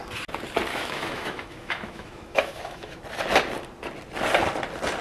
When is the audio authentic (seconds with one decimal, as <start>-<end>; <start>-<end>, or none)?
0.0-0.7; 3.0-5.0

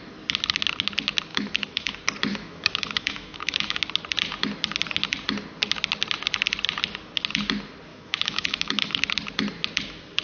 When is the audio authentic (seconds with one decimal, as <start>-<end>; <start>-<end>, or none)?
0.0-1.3; 1.9-2.3; 3.8-7.9; 9.0-10.2

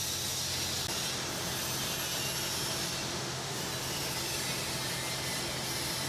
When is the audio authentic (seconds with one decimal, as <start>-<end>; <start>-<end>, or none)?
0.0-3.1; 3.6-6.1

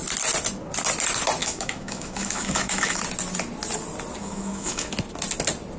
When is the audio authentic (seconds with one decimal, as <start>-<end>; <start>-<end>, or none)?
0.0-1.4; 3.0-4.2; 4.9-5.8

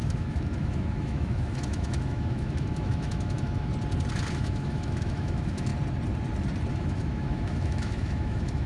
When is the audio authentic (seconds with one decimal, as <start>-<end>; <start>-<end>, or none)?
3.7-4.3; 5.7-6.7

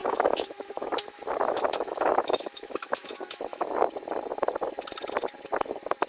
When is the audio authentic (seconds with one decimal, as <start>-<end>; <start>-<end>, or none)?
3.7-6.1

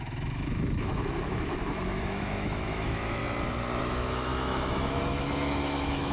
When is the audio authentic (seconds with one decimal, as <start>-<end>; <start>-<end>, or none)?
3.2-3.8